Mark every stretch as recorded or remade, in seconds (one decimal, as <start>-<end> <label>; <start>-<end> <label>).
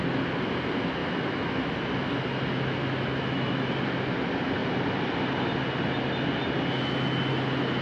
0.0-1.0 recorded; 1.0-1.7 remade; 1.7-2.8 recorded; 2.8-3.7 remade; 3.7-7.8 recorded